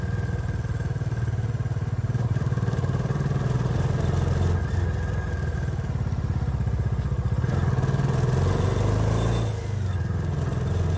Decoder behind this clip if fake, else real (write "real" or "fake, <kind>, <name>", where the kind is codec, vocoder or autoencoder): real